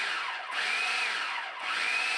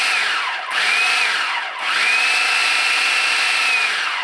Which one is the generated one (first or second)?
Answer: first